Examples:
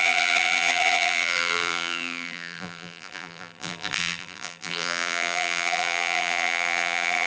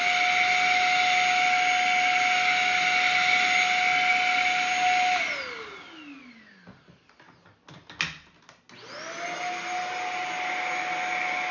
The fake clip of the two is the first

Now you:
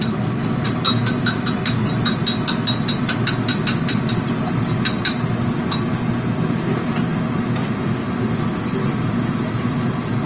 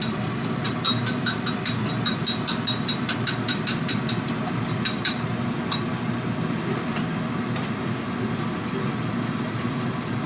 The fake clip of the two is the second